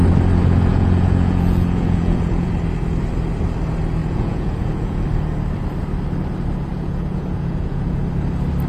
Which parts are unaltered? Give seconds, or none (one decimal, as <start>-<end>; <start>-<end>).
0.0-0.7; 2.5-4.0; 5.0-6.7; 8.0-8.7